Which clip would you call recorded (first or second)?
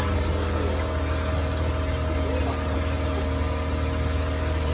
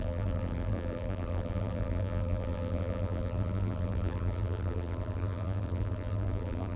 first